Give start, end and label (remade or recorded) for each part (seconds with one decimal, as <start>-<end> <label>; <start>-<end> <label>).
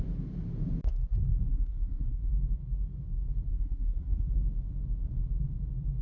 0.0-1.3 recorded; 1.3-2.3 remade; 2.3-3.5 recorded; 3.5-4.3 remade; 4.3-6.0 recorded